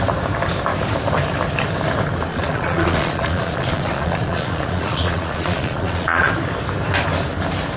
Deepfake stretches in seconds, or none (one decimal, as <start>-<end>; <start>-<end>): 2.3-6.3

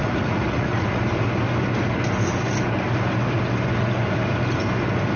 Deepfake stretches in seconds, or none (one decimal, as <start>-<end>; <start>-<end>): 0.0-1.0

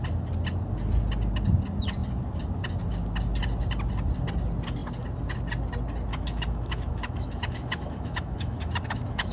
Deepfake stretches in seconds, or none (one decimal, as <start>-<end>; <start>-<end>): 6.1-9.3

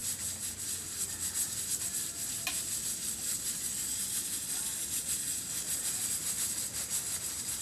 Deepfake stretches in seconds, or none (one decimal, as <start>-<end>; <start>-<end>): none

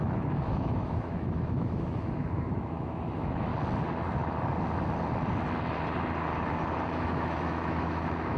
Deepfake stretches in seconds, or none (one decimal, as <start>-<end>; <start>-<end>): 0.0-3.5; 6.8-8.4

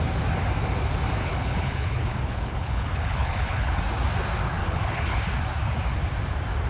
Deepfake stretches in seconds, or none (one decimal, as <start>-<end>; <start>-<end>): 1.2-3.8; 4.6-5.2